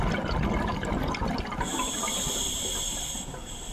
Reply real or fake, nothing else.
real